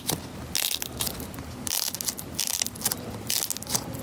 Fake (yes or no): no